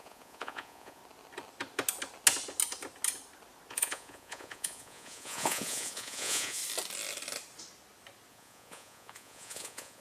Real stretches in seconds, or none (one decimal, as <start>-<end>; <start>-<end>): 1.0-3.7; 6.6-8.3